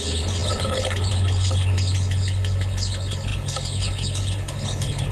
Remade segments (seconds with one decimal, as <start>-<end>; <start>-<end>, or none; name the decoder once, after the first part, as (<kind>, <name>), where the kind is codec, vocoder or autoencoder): 0.0-5.1 (codec, HILCodec)

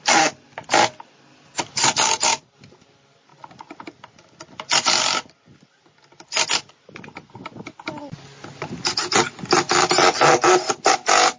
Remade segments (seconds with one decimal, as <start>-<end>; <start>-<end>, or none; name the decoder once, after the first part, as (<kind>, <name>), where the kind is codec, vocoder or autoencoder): none

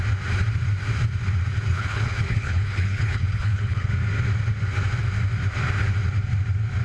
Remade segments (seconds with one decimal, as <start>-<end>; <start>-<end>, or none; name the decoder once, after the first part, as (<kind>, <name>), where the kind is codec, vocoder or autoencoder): 1.7-3.9 (codec, HILCodec)